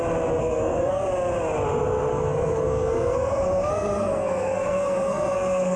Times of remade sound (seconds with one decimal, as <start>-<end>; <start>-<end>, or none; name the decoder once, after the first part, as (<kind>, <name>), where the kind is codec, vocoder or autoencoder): 0.4-1.0 (codec, SNAC); 2.1-5.8